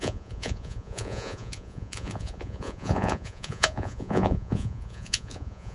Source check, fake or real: fake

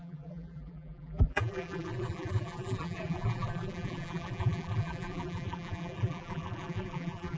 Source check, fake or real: fake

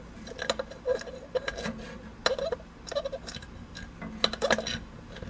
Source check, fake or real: real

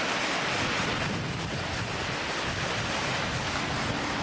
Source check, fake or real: real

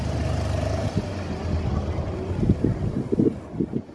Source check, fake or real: real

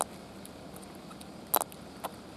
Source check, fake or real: real